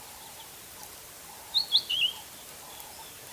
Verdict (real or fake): real